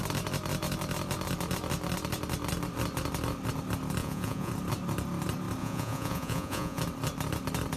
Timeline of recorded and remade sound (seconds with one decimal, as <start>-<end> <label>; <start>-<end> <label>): 0.0-4.0 recorded; 4.0-4.5 remade; 4.5-5.6 recorded; 5.6-6.8 remade; 6.8-7.8 recorded